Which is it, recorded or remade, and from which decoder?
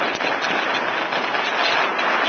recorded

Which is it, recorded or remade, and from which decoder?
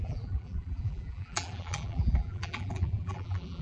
remade, vocoder, BigVGAN v2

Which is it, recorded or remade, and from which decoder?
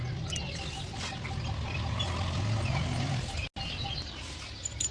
recorded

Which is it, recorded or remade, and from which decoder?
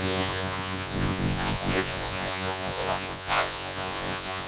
remade, vocoder, Vocos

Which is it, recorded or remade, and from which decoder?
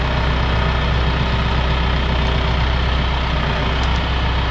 recorded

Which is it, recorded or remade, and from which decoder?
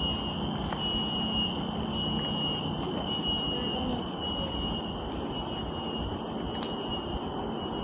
recorded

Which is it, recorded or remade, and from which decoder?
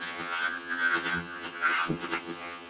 remade, vocoder, HiFi-GAN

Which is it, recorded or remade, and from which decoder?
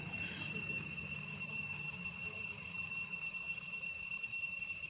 remade, autoencoder, DAC-VAE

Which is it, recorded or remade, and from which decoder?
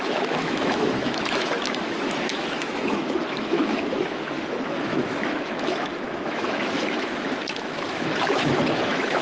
remade, autoencoder, DAC-VAE